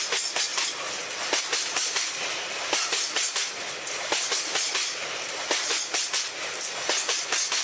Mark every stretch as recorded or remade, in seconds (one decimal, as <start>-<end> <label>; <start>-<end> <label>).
0.0-7.6 recorded